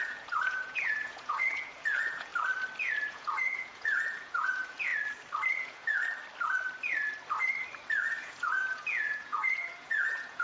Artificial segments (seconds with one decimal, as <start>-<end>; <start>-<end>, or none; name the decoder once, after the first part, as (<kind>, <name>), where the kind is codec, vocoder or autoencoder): 0.0-2.3 (vocoder, Vocos); 3.1-4.9; 5.6-6.0; 8.2-10.4